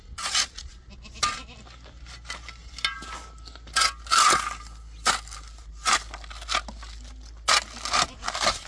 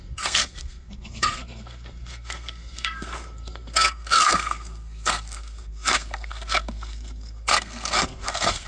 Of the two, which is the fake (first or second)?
second